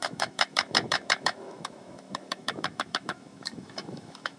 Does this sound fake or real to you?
fake